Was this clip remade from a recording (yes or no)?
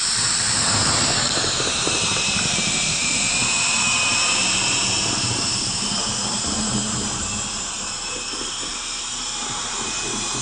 yes